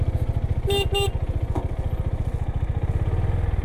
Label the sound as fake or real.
real